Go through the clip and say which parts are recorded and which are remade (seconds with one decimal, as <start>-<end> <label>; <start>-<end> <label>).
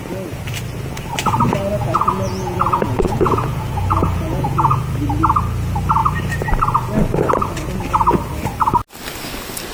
0.0-1.8 recorded; 1.8-4.8 remade; 4.8-9.7 recorded